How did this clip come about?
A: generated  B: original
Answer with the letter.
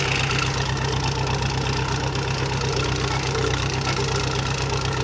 B